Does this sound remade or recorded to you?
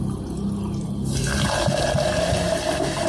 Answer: recorded